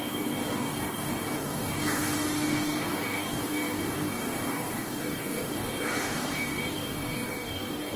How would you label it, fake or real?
fake